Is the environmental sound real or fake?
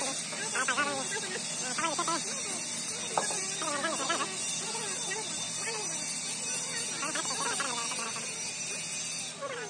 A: real